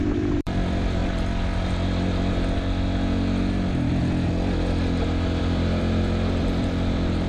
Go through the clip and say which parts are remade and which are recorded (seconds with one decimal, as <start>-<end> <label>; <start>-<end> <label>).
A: 0.0-1.0 remade; 1.0-5.4 recorded; 5.4-7.3 remade